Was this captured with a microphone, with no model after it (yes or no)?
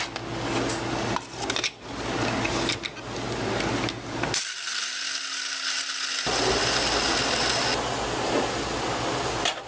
yes